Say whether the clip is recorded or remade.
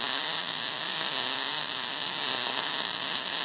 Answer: recorded